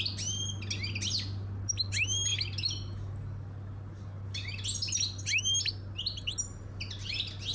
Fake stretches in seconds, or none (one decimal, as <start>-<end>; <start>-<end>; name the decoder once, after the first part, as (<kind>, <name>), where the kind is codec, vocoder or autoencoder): none